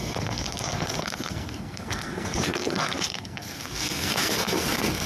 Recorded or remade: remade